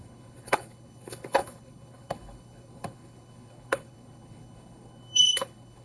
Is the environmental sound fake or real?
fake